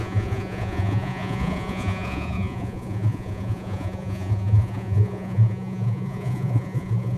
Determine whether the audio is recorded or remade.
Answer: remade